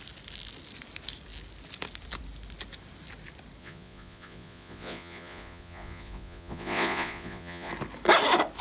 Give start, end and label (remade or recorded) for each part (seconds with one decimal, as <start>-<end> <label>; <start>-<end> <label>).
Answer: 0.0-3.6 recorded; 3.6-7.7 remade; 7.7-8.6 recorded